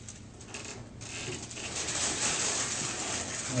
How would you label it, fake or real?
real